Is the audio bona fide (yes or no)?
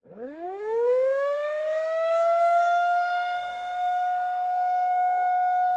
no